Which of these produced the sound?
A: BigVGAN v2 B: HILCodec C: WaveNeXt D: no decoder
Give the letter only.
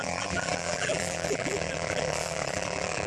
A